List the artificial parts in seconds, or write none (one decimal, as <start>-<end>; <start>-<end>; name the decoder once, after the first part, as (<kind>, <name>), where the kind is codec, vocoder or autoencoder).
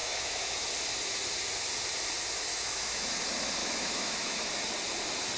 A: 0.0-0.7 (autoencoder, DAC-VAE); 2.5-3.1; 3.6-4.5